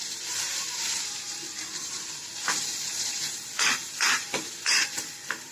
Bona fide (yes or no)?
no